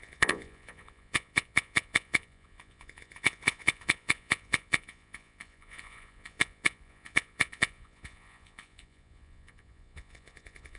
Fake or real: fake